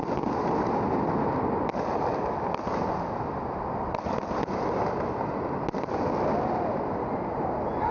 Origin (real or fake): real